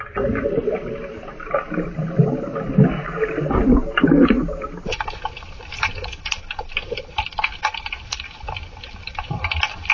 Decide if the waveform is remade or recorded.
recorded